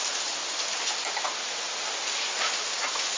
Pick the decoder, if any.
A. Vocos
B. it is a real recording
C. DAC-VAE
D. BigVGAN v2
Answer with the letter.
B